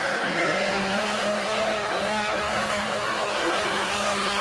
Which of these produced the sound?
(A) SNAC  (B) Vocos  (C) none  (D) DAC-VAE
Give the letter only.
A